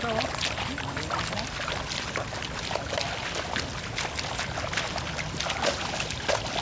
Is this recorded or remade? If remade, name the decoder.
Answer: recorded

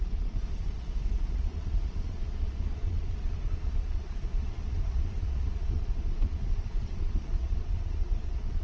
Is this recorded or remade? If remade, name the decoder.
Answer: remade, vocoder, Vocos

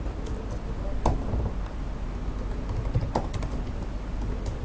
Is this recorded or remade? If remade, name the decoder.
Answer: recorded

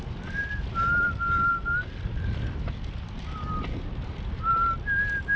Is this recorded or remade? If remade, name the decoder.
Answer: recorded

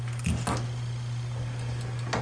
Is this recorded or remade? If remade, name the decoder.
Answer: recorded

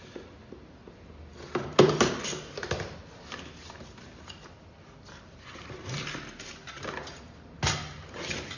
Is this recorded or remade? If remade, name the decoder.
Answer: recorded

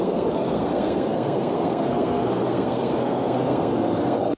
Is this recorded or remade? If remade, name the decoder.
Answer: remade, codec, SNAC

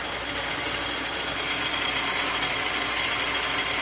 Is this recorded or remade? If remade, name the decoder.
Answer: recorded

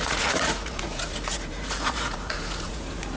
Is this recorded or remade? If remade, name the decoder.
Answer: remade, vocoder, Vocos